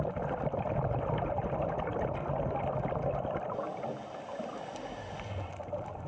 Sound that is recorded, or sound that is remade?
recorded